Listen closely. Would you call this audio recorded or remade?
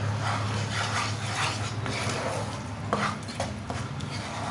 recorded